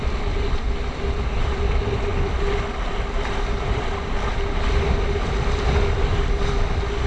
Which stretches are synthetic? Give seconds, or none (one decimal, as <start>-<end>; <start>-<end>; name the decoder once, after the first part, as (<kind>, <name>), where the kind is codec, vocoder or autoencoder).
none